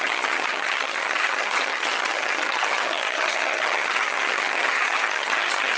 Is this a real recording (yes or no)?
no